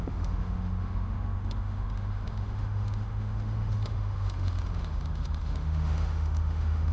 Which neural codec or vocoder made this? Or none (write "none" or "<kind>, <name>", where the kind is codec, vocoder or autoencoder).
autoencoder, DAC-VAE